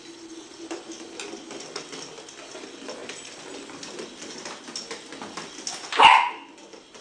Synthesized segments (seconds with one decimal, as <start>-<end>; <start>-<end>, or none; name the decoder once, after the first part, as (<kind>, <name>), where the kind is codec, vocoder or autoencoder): none